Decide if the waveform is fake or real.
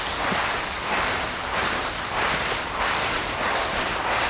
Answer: real